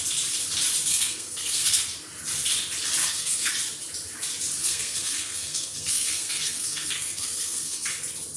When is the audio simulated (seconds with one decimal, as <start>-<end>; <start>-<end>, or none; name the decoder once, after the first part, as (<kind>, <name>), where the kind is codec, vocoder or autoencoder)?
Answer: 0.9-1.8 (codec, SNAC); 3.0-3.5; 4.6-7.9